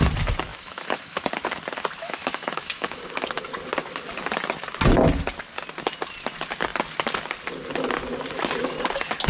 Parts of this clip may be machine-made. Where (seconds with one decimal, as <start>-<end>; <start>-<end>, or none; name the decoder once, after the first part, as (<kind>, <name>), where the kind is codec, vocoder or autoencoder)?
0.5-1.3 (autoencoder, DAC-VAE); 2.0-3.0